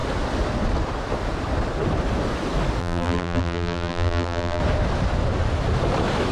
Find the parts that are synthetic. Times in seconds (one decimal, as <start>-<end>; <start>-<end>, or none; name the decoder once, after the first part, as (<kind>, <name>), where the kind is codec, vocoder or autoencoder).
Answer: 2.8-4.6 (vocoder, BigVGAN v2)